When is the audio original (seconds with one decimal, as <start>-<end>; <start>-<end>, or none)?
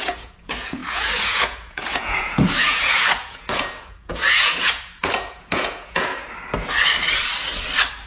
6.1-8.1